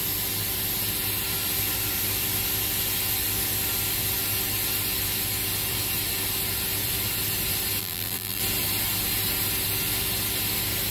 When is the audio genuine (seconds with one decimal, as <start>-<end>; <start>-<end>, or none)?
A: 0.0-7.8; 8.4-10.9